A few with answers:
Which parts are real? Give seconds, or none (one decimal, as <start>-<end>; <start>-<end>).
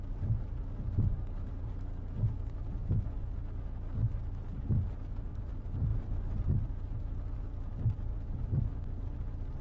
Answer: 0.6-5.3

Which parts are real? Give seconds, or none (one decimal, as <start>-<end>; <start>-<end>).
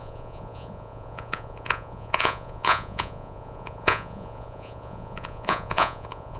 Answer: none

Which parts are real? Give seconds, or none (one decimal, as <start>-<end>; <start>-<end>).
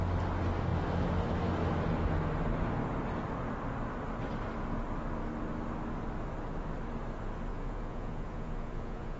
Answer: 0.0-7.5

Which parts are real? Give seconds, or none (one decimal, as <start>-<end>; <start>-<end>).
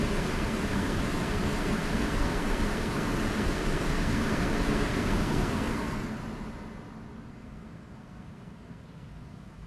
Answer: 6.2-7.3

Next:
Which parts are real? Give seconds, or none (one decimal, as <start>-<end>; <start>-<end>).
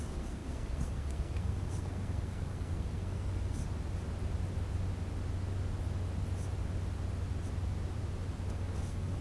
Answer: 3.6-8.5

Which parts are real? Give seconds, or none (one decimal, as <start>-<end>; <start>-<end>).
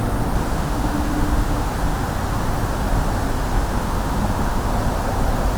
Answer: 0.0-0.5; 1.7-3.6; 4.7-5.6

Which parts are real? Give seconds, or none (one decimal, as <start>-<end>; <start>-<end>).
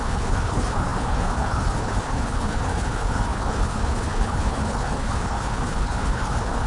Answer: none